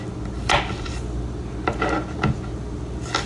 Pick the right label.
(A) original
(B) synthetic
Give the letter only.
A